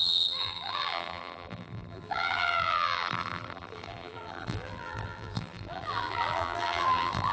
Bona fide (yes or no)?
no